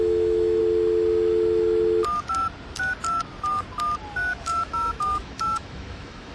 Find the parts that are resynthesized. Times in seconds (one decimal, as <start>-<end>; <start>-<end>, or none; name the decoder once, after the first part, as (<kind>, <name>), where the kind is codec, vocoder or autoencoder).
0.0-0.6 (autoencoder, DAC-VAE); 4.4-6.3